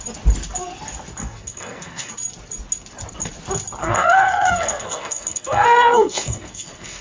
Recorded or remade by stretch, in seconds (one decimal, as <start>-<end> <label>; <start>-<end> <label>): 0.0-1.2 recorded; 1.2-2.1 remade; 2.1-3.8 recorded; 3.8-7.0 remade